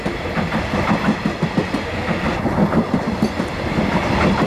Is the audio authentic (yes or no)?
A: yes